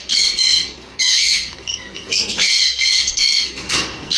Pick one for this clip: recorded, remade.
remade